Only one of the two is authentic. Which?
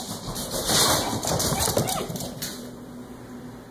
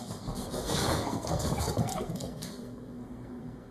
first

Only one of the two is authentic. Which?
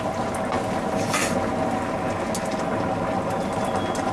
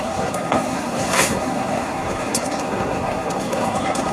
first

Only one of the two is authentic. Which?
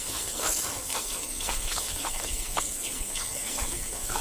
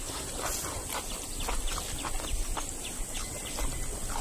second